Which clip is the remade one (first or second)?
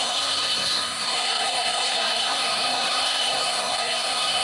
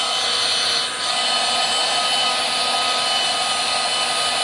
first